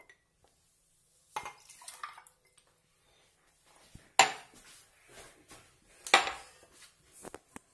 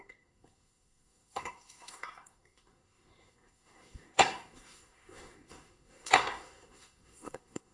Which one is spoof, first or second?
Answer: second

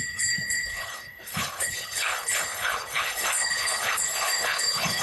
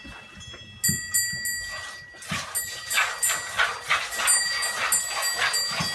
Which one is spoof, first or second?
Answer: first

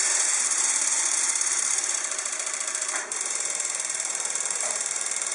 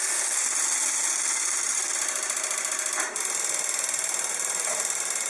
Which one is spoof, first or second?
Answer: first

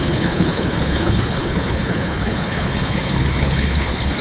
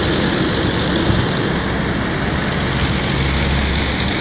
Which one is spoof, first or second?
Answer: first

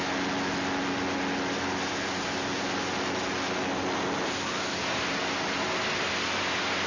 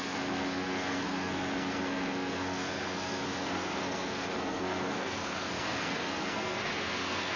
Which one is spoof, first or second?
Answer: second